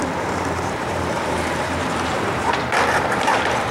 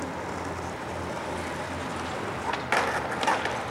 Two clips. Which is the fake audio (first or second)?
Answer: first